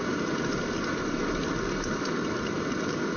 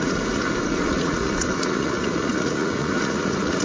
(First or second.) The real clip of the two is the first